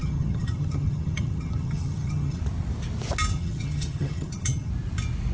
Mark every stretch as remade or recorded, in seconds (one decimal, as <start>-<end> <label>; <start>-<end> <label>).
0.0-2.4 remade; 2.4-3.3 recorded; 3.3-4.7 remade; 4.7-5.3 recorded